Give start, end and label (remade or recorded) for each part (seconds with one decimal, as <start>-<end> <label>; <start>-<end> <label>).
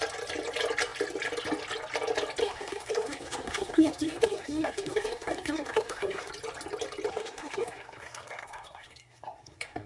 0.0-2.4 recorded; 2.4-6.3 remade; 6.3-7.1 recorded; 7.1-9.9 remade